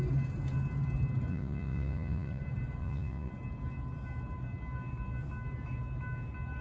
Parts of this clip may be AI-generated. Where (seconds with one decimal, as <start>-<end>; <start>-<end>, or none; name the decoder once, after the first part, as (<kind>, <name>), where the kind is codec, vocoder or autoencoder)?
1.3-2.4 (vocoder, Vocos); 2.8-3.3